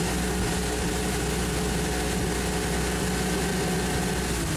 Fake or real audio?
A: real